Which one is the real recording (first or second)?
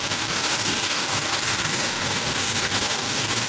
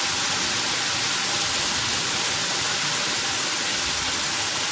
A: second